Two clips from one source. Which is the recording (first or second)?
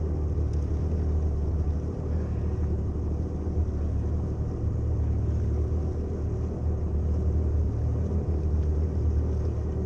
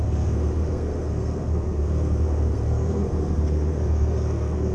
first